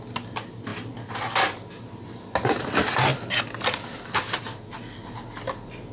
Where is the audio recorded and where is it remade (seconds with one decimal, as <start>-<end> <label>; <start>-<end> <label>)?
0.0-5.9 recorded